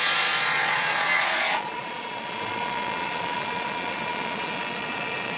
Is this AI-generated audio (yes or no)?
yes